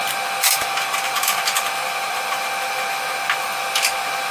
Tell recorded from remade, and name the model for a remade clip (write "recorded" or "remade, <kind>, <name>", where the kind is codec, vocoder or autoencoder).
recorded